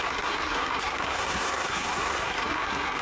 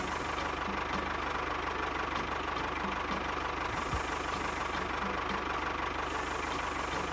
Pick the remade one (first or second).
first